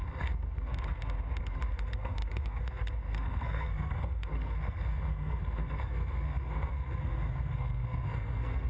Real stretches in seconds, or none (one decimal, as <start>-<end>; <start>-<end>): 0.7-1.4

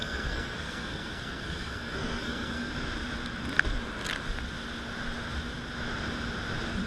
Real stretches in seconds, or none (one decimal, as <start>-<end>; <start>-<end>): 2.7-6.9

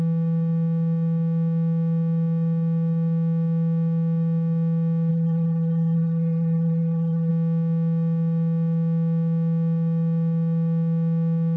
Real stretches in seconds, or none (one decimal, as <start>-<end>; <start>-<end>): 0.0-5.1; 7.3-11.6

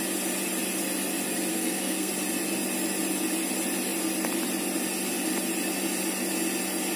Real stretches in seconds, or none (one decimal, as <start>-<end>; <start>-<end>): 0.0-1.5; 2.1-7.0

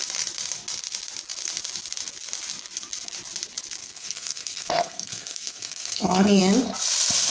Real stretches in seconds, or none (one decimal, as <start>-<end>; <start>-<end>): 0.0-3.8; 6.4-7.3

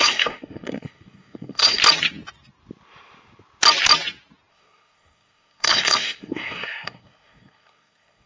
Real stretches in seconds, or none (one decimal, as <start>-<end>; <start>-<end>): 1.8-4.5

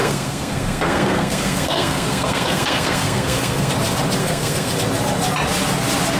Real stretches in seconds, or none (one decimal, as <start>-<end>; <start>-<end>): 3.7-4.2; 4.7-6.2

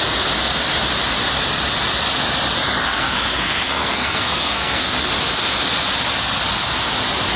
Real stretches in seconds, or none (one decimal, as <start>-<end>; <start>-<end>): 0.0-2.8; 5.1-7.4